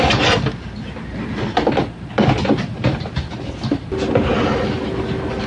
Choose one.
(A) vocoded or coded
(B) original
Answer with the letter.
A